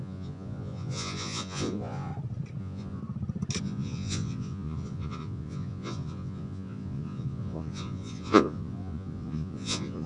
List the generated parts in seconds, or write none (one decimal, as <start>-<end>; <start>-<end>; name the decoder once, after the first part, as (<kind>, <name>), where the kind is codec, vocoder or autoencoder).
0.0-2.1 (vocoder, Vocos); 2.6-3.0; 3.6-10.1